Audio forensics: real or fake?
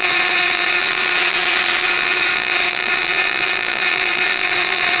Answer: fake